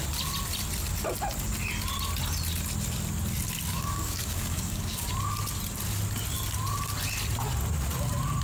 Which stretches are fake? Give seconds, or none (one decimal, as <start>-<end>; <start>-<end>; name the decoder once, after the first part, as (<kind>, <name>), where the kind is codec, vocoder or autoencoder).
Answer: 3.7-5.1 (codec, DAC)